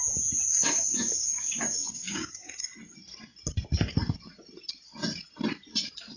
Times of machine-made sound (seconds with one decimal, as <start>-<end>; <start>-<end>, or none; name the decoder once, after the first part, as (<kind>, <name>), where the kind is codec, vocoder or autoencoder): 0.5-2.5 (codec, DAC)